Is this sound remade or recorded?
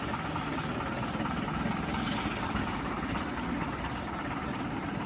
remade